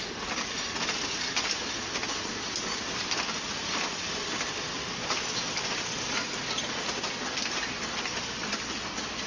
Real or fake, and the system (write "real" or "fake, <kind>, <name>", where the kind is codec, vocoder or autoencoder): real